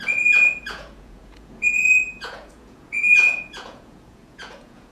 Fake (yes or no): yes